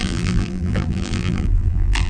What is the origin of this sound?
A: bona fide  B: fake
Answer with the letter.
B